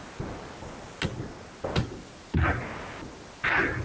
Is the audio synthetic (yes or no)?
no